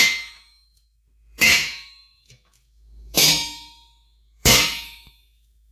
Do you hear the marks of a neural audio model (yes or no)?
yes